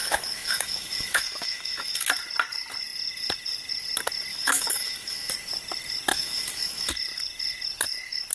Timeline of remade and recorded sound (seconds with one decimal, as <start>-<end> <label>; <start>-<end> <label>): 0.0-2.1 remade; 2.1-4.3 recorded; 4.3-5.3 remade; 5.3-6.1 recorded; 6.1-6.9 remade; 6.9-8.3 recorded